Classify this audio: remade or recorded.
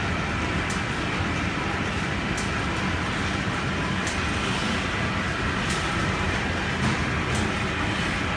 recorded